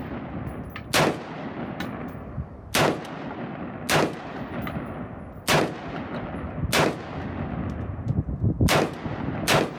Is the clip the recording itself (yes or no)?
yes